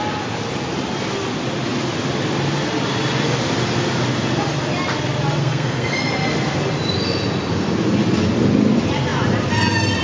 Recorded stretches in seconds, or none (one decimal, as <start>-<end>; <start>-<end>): 0.0-5.4; 6.0-10.0